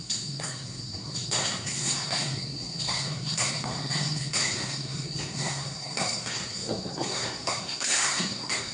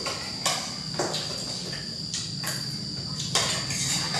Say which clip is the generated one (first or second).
first